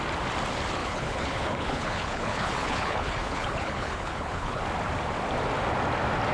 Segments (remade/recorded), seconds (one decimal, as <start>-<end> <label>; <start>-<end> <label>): 0.0-0.8 recorded; 0.8-4.6 remade; 4.6-6.3 recorded